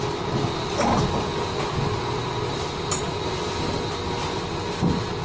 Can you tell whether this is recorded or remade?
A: recorded